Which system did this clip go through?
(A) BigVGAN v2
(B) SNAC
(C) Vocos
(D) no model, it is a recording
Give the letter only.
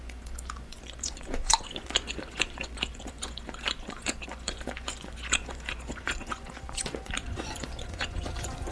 C